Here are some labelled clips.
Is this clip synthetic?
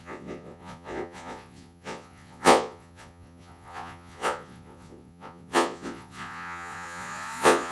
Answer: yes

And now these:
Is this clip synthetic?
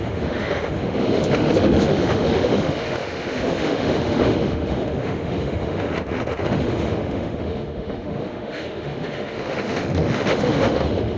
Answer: yes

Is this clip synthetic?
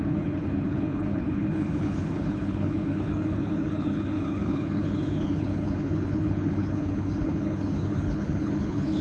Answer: yes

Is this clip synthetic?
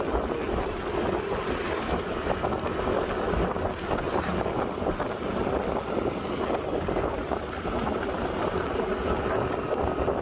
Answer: no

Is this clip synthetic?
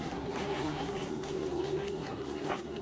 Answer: yes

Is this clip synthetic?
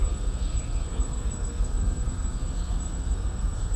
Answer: yes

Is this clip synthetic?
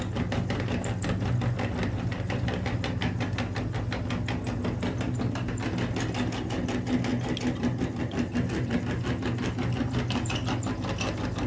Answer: no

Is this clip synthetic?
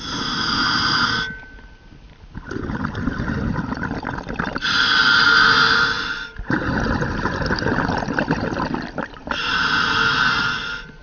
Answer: no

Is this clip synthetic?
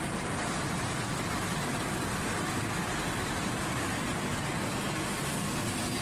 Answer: no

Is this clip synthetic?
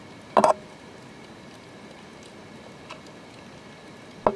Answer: no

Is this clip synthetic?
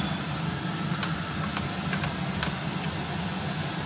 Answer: no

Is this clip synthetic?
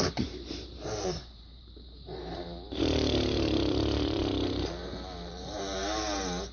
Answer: yes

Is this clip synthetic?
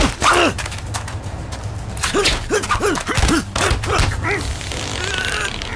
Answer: no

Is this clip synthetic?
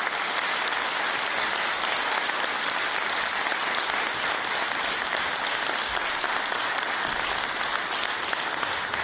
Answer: no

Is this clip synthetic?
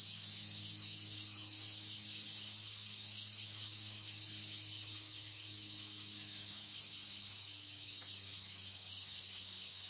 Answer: yes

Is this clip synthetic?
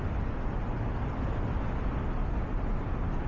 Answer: no